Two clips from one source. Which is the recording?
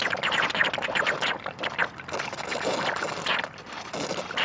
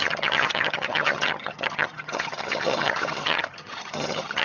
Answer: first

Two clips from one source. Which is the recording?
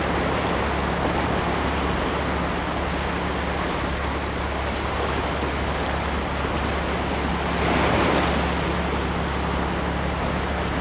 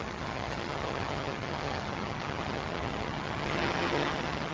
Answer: first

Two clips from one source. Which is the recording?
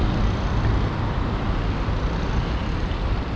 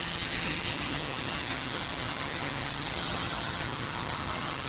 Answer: first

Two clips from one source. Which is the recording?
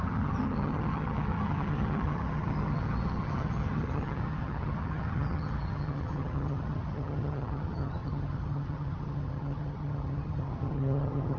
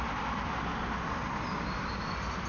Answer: second